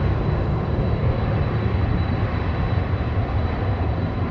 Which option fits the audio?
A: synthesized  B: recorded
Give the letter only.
B